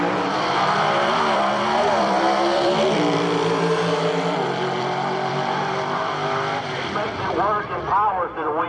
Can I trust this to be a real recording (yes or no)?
no